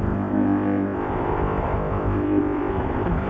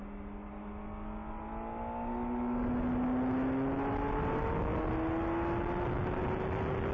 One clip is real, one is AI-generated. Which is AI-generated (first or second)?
first